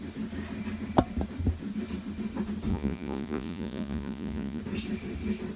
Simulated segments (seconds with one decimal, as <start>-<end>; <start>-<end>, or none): 2.7-4.6